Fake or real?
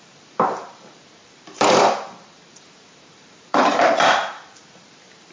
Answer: fake